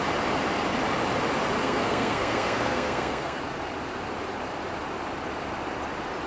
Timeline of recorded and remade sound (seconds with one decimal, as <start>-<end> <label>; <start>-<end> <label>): 0.0-1.6 recorded; 1.6-3.4 remade; 3.4-6.3 recorded